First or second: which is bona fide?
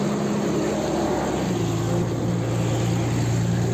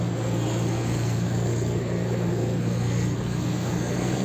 first